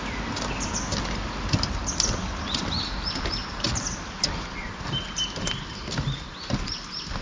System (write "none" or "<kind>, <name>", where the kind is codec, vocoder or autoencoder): none